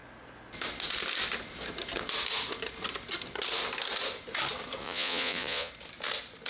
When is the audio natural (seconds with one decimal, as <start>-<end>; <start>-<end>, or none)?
0.0-4.8; 5.7-6.5